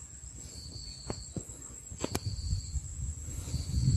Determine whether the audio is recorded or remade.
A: remade